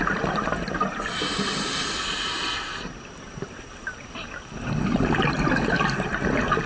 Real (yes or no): yes